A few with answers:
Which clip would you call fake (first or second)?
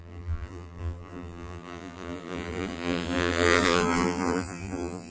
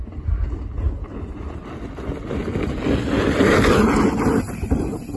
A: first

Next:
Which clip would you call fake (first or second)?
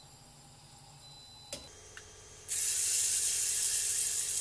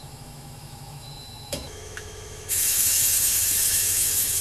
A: second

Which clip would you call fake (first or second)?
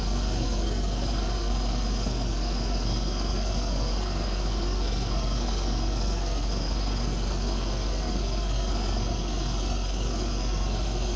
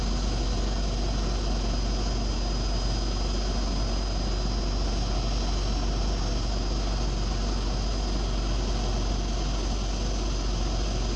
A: first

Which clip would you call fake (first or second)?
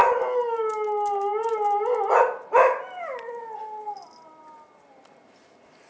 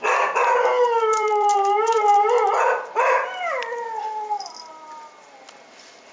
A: second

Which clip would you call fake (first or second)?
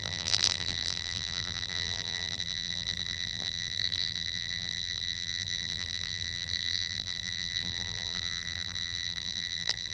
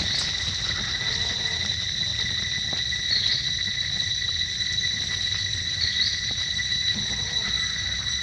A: first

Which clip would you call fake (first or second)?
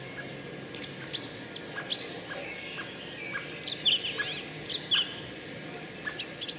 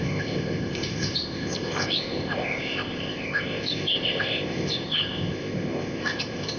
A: second